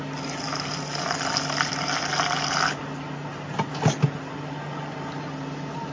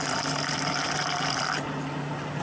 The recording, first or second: first